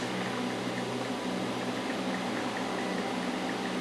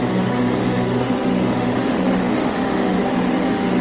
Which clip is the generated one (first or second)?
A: second